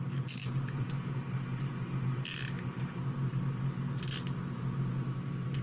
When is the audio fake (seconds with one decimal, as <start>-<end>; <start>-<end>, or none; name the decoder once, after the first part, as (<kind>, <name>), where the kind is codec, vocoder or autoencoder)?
none